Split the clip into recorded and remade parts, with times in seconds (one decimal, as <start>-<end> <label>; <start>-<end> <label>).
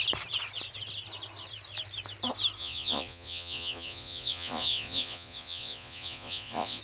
0.0-2.6 recorded; 2.6-6.8 remade